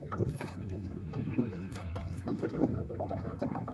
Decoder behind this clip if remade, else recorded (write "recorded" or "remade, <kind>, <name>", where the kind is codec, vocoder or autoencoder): remade, codec, SNAC